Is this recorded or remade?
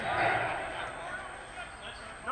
recorded